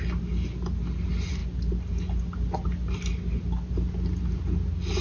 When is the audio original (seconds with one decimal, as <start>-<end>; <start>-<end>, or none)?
0.0-5.0